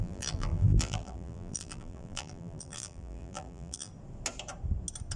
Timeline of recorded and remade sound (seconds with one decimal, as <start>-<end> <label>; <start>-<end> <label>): 0.0-3.9 remade; 3.9-5.2 recorded

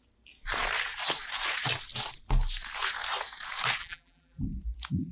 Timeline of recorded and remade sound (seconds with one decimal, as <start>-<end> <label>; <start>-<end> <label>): 0.0-3.8 recorded; 3.8-4.4 remade; 4.4-5.1 recorded

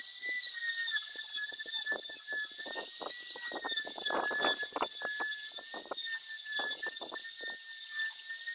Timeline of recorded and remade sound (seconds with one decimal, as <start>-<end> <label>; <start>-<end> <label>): 0.0-8.5 recorded